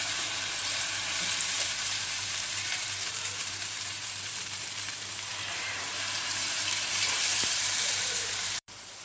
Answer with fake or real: fake